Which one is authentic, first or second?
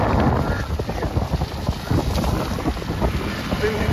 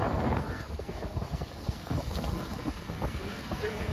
first